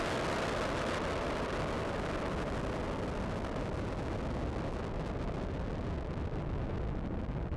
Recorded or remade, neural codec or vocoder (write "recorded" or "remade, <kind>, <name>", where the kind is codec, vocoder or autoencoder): recorded